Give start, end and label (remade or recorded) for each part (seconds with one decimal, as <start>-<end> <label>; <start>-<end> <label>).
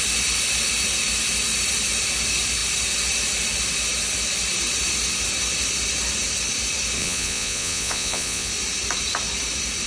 0.0-7.0 recorded; 7.0-8.5 remade; 8.5-9.9 recorded